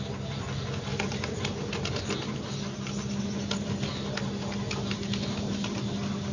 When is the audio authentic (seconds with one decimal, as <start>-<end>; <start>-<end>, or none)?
0.0-6.3